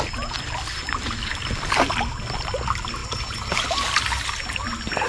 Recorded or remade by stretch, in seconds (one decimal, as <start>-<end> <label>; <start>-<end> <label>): 0.0-5.1 recorded